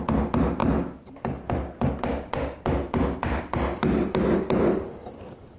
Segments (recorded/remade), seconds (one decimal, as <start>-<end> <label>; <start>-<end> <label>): 0.0-5.6 recorded